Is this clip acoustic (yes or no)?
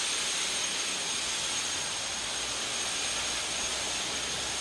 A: yes